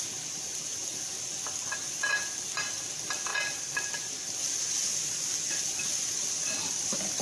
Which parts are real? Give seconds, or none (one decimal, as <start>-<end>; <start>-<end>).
0.7-2.1; 3.3-5.6